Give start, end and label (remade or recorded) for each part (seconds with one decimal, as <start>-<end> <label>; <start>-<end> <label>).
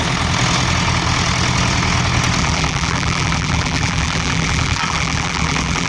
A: 0.0-2.4 recorded; 2.4-5.9 remade